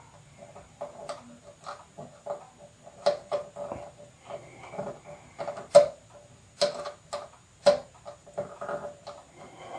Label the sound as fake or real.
real